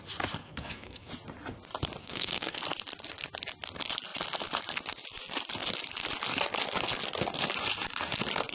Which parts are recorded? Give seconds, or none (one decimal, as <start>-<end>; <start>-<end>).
0.0-0.4; 1.1-2.0; 2.6-8.5